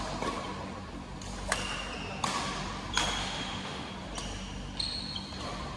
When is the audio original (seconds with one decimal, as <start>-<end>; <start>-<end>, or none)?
0.0-3.2; 3.9-5.8